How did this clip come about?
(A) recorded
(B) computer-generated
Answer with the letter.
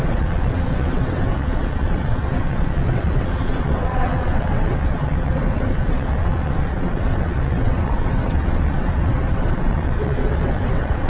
B